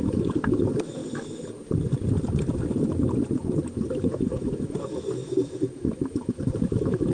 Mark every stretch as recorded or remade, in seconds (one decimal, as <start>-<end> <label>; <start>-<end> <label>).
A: 0.0-1.0 remade; 1.0-4.0 recorded; 4.0-7.1 remade